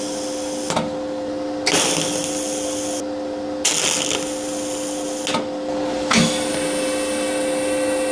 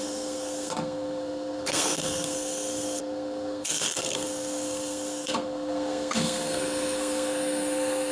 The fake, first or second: second